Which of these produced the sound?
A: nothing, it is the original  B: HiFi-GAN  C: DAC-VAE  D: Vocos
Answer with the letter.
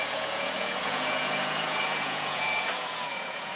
D